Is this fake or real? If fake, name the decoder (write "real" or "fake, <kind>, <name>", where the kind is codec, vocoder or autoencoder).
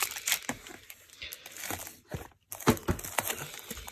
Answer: real